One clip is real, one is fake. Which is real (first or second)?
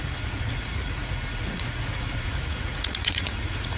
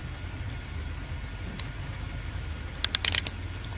second